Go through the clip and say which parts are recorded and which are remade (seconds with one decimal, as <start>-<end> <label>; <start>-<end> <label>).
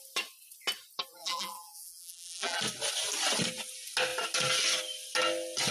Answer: 0.0-1.2 recorded; 1.2-2.6 remade; 2.6-5.7 recorded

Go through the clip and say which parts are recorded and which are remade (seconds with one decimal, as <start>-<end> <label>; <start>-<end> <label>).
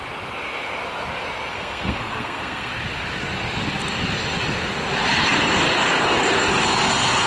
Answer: 0.0-1.5 recorded; 1.5-2.7 remade; 2.7-7.3 recorded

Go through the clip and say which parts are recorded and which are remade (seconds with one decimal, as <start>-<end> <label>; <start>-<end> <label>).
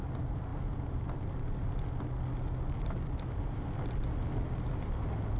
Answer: 0.0-5.4 recorded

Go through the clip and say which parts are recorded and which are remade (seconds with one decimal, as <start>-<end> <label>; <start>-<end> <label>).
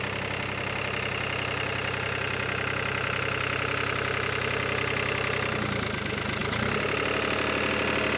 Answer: 0.0-8.2 recorded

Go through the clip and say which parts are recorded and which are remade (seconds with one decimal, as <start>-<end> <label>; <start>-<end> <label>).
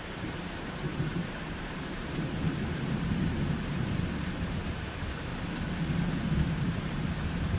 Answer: 0.0-5.3 remade; 5.3-6.3 recorded; 6.3-7.6 remade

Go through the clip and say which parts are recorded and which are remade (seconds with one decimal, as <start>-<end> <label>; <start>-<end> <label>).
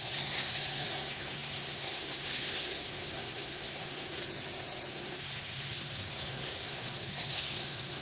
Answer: 0.0-4.2 remade; 4.2-4.9 recorded; 4.9-8.0 remade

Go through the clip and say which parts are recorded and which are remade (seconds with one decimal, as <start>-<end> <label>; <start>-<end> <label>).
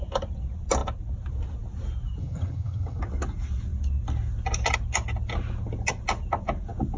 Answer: 0.0-2.2 recorded; 2.2-3.0 remade; 3.0-7.0 recorded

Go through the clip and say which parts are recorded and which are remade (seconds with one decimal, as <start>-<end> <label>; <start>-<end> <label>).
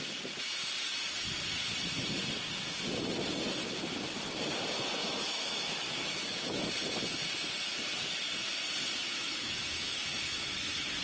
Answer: 0.0-5.0 recorded; 5.0-6.7 remade; 6.7-9.0 recorded; 9.0-11.0 remade